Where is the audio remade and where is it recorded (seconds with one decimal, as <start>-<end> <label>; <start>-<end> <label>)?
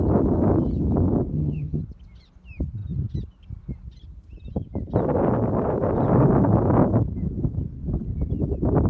0.0-1.3 recorded; 1.3-1.8 remade; 1.8-8.9 recorded